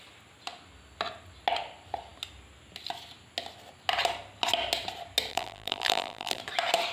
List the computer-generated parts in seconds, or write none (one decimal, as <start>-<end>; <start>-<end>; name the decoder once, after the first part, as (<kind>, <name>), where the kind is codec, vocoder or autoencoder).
5.3-6.4 (vocoder, BigVGAN v2)

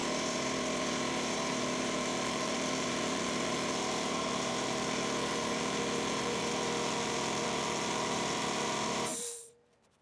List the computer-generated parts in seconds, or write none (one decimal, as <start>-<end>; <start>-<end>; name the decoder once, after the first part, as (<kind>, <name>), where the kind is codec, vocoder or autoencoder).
1.5-10.0 (vocoder, BigVGAN v2)

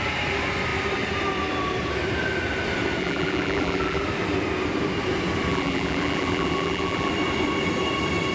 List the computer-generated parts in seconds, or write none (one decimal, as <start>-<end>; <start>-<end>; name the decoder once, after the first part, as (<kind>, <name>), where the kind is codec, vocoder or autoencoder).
3.0-4.0 (vocoder, BigVGAN v2); 5.5-7.1

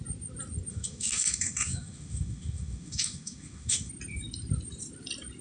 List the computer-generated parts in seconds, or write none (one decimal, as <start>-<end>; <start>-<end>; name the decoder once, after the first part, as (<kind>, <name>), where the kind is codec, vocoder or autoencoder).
0.7-3.9 (autoencoder, DAC-VAE)

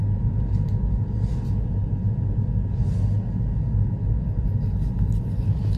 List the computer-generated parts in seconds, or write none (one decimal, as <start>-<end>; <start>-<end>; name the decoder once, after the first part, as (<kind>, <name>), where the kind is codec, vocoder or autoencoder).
none

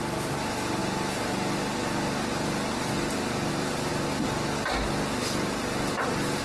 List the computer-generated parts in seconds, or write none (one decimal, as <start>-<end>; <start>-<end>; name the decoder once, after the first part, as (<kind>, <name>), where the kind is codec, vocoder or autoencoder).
none